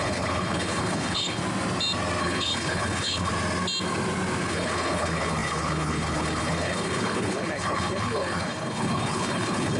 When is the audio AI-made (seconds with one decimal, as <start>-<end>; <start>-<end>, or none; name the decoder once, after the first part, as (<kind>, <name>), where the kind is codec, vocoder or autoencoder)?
0.0-1.4 (codec, HILCodec); 2.2-3.3; 4.5-9.8